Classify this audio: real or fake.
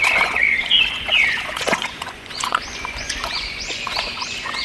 fake